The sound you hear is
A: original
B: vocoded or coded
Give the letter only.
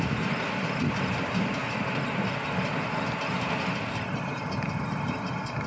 A